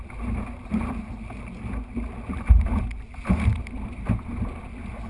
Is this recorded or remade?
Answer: recorded